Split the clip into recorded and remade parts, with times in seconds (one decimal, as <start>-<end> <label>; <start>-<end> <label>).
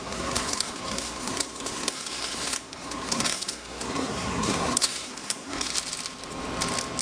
0.0-5.7 remade; 5.7-7.0 recorded